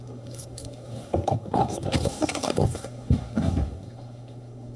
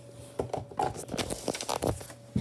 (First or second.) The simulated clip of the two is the first